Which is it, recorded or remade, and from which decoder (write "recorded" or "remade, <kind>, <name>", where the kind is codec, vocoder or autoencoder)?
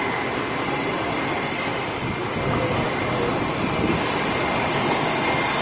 recorded